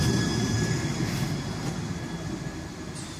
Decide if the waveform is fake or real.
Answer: real